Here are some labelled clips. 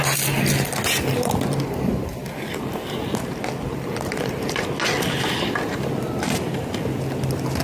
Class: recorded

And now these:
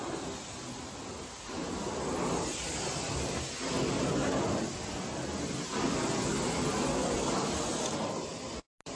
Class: recorded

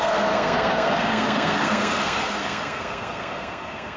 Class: remade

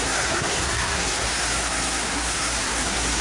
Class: remade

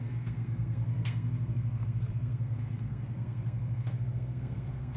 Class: remade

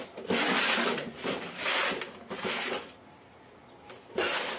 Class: recorded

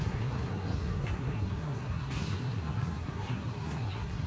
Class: remade